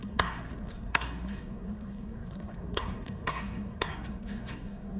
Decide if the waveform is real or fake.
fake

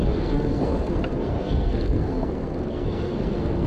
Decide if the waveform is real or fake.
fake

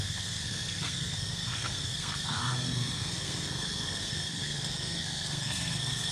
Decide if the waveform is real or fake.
fake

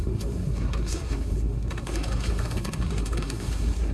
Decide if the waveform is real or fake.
fake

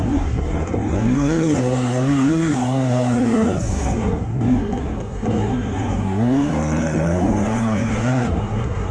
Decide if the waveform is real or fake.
fake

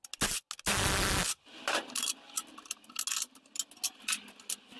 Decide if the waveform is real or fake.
real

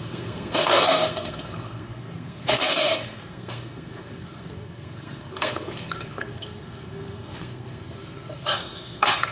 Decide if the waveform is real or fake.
fake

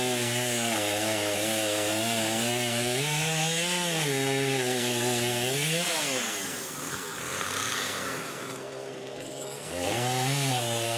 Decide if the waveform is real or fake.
fake